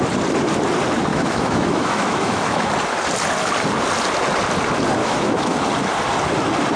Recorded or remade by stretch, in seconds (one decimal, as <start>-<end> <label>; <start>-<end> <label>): 0.0-1.1 recorded; 1.1-2.7 remade; 2.7-5.0 recorded; 5.0-5.6 remade; 5.6-6.8 recorded